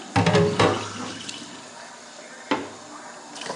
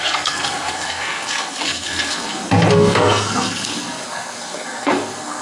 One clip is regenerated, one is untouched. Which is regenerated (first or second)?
second